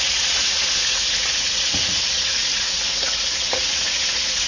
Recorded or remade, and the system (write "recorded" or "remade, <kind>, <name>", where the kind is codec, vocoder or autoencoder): remade, vocoder, Vocos